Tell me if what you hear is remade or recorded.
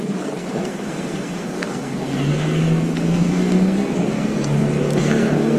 remade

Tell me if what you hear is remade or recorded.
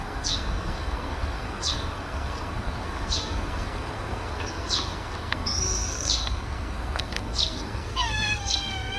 remade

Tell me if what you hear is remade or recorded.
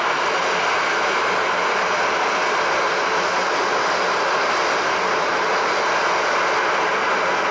recorded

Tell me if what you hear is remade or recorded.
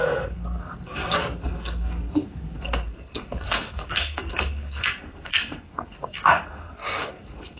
remade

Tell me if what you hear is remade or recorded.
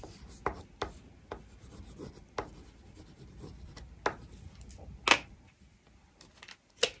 recorded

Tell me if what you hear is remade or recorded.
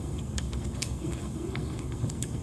remade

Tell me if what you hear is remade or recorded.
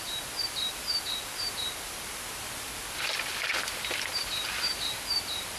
recorded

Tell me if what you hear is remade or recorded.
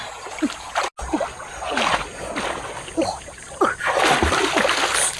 recorded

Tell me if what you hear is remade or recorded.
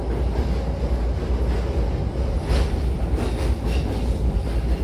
recorded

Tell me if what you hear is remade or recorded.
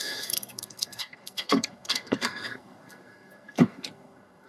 remade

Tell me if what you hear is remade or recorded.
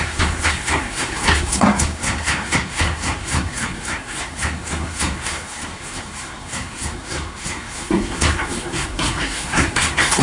remade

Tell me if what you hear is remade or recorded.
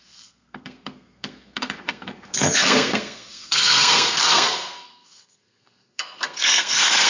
remade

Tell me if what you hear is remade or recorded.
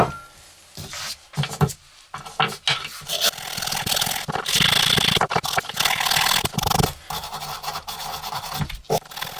recorded